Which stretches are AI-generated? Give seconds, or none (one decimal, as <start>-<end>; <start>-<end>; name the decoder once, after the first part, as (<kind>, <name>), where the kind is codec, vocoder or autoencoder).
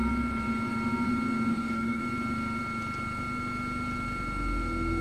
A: 1.5-2.0 (codec, DAC)